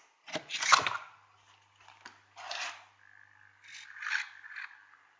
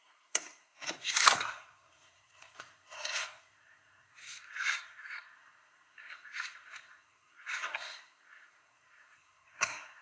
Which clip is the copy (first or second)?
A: second